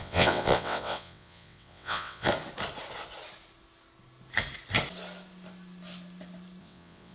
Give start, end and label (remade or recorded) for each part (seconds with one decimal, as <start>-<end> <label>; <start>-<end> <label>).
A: 0.0-2.3 remade; 2.3-6.6 recorded; 6.6-7.1 remade

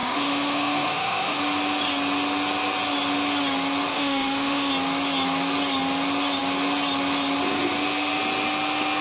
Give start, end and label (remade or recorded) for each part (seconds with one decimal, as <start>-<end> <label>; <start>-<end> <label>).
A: 0.0-1.4 remade; 1.4-3.9 recorded; 3.9-4.7 remade; 4.7-9.0 recorded

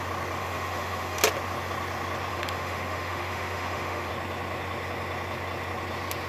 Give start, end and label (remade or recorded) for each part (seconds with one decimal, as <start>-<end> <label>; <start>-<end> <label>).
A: 0.0-0.4 recorded; 0.4-1.2 remade; 1.2-2.3 recorded; 2.3-4.1 remade; 4.1-6.3 recorded

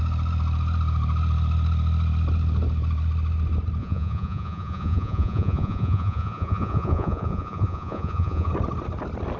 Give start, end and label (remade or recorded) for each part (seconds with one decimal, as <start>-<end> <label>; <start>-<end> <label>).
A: 0.0-3.8 recorded; 3.8-8.5 remade; 8.5-9.4 recorded

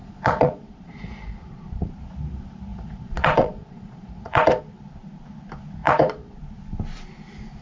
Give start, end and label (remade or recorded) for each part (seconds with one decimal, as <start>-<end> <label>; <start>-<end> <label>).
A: 0.0-1.9 remade; 1.9-2.7 recorded; 2.7-4.6 remade; 4.6-5.8 recorded; 5.8-6.4 remade; 6.4-7.6 recorded

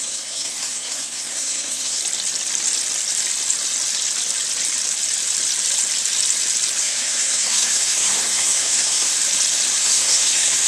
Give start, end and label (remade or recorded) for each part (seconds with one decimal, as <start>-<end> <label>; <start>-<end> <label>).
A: 0.0-2.0 remade; 2.0-6.8 recorded; 6.8-9.1 remade; 9.1-9.8 recorded; 9.8-10.7 remade

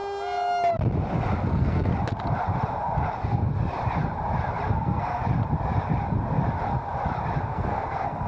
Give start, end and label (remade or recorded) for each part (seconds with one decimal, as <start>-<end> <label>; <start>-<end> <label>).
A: 0.0-1.5 recorded; 1.5-1.9 remade; 1.9-4.8 recorded; 4.8-5.2 remade; 5.2-7.5 recorded; 7.5-8.3 remade